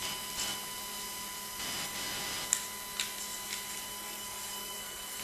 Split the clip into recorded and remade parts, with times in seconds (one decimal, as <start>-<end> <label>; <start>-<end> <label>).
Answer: 0.0-3.9 recorded; 3.9-5.2 remade